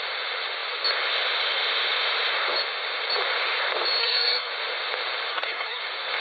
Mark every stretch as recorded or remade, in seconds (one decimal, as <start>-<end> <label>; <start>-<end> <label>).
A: 0.0-4.0 recorded; 4.0-4.5 remade; 4.5-5.3 recorded; 5.3-5.8 remade; 5.8-6.2 recorded